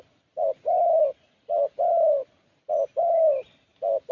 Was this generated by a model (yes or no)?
no